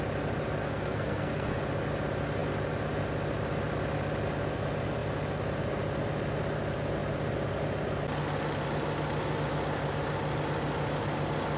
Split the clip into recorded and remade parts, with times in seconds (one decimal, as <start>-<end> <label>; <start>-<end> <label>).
0.0-0.6 recorded; 0.6-1.6 remade; 1.6-11.6 recorded